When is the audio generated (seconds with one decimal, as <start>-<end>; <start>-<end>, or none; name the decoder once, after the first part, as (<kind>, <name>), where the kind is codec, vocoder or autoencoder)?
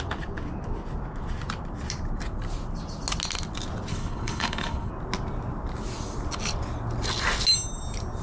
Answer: 3.9-4.9 (codec, HILCodec)